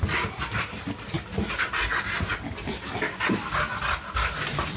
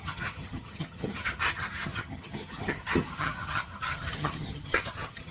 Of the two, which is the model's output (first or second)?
second